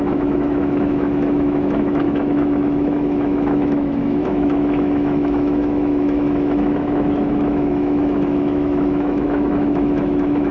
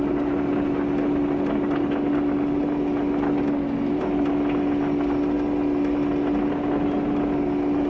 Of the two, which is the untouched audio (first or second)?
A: second